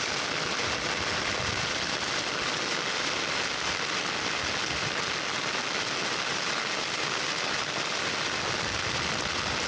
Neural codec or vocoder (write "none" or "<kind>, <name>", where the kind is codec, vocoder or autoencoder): none